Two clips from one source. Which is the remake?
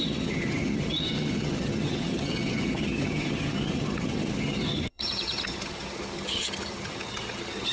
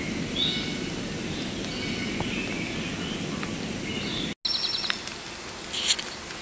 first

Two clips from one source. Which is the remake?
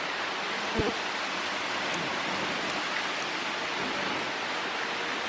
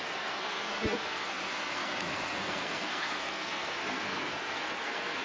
second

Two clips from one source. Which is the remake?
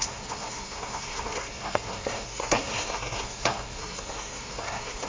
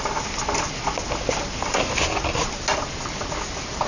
first